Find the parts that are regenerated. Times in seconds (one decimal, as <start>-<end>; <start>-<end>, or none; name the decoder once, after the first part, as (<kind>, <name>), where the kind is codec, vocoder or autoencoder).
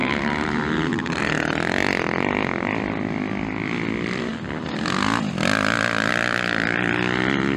0.0-1.2 (vocoder, BigVGAN v2)